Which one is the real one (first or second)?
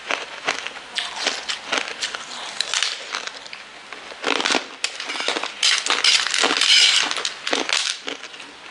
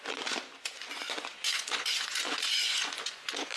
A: first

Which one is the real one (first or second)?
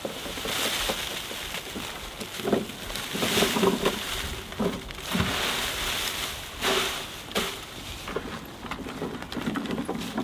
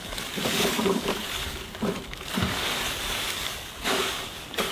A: first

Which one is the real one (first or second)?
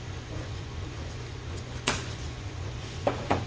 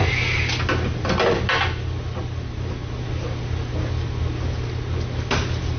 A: second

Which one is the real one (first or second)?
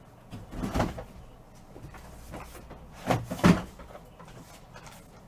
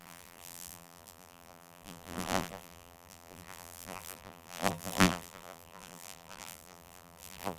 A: first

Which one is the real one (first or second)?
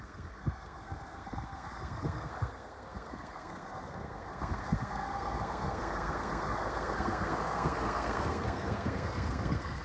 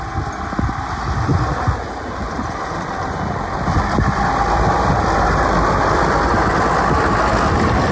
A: second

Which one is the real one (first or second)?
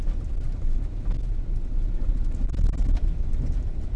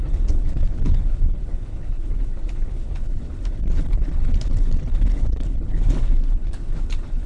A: first